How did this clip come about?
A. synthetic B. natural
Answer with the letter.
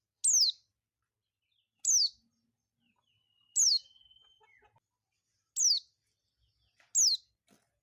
B